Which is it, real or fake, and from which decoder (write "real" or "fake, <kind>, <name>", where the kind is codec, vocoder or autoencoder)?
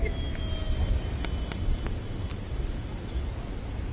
real